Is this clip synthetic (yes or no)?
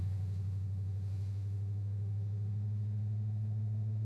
yes